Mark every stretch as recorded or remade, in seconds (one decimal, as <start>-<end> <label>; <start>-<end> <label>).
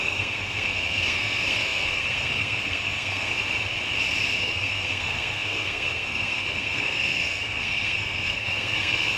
0.0-3.3 remade; 3.3-4.4 recorded; 4.4-9.2 remade